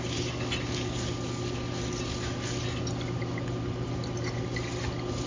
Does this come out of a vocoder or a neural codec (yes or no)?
no